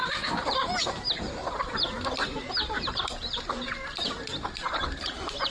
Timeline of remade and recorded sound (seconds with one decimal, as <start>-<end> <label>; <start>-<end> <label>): 0.0-1.8 remade; 1.8-2.2 recorded; 2.2-5.5 remade